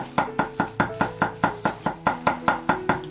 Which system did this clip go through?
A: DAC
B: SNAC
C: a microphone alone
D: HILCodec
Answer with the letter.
C